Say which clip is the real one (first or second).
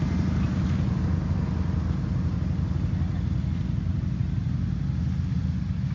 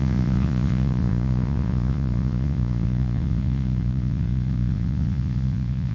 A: first